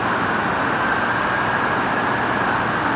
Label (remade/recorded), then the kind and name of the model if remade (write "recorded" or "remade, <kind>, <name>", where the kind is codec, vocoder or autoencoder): recorded